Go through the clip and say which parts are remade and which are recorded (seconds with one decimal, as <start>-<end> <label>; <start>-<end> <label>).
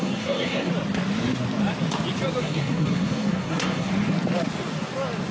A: 0.0-0.7 remade; 0.7-2.4 recorded; 2.4-3.9 remade; 3.9-5.3 recorded